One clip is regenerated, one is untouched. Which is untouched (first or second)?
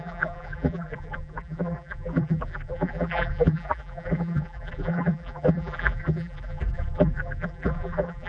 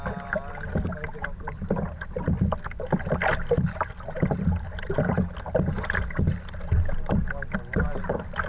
second